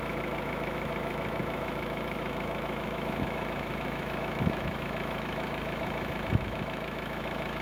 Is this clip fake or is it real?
fake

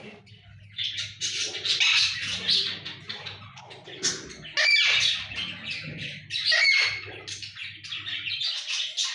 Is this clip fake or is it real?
real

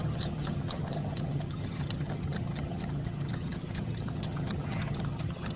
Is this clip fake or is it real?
fake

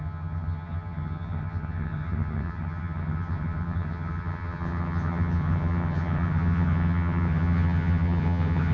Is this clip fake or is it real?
fake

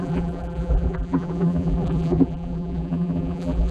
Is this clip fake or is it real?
fake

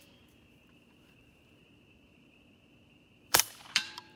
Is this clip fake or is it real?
fake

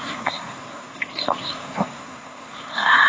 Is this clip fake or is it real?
fake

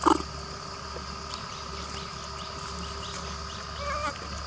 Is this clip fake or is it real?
real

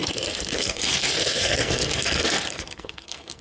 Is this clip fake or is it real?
fake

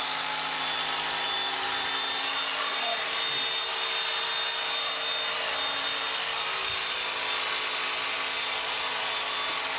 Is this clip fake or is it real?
real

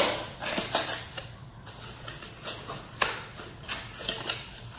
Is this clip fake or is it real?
real